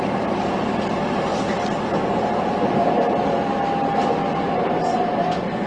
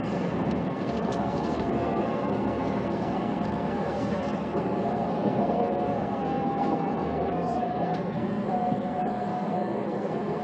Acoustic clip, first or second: first